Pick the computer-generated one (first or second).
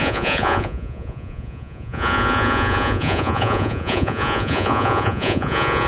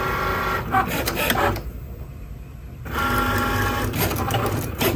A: first